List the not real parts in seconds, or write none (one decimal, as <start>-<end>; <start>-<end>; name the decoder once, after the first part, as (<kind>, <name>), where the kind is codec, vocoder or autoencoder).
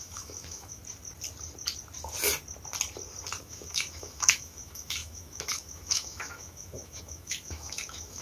0.0-0.8 (autoencoder, DAC-VAE); 3.4-8.2